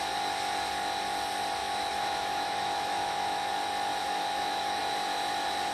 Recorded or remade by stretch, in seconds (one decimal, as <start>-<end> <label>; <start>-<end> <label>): 0.0-1.6 recorded; 1.6-3.5 remade; 3.5-4.0 recorded; 4.0-4.8 remade; 4.8-5.7 recorded